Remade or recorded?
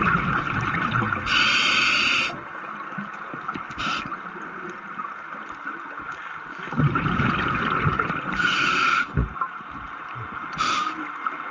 recorded